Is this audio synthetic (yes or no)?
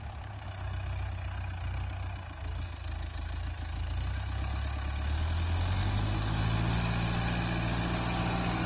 no